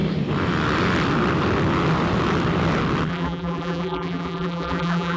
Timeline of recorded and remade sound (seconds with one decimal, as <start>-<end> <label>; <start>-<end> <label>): 0.0-3.1 recorded; 3.1-5.2 remade